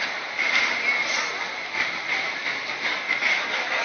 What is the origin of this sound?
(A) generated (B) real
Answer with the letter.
B